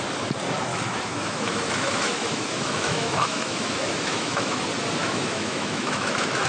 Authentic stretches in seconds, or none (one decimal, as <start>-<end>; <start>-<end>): 0.0-0.7; 4.6-5.0